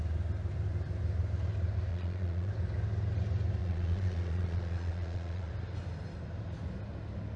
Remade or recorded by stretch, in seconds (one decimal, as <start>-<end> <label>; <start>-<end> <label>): 0.0-1.9 recorded; 1.9-2.5 remade; 2.5-3.6 recorded; 3.6-5.5 remade; 5.5-7.4 recorded